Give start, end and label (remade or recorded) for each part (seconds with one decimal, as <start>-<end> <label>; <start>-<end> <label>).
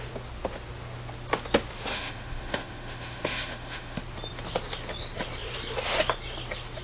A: 0.0-1.9 recorded; 1.9-4.0 remade; 4.0-6.8 recorded